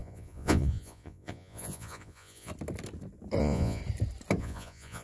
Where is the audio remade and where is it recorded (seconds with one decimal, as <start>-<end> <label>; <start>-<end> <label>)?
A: 0.0-2.5 remade; 2.5-3.4 recorded; 3.4-3.8 remade; 3.8-4.4 recorded; 4.4-5.0 remade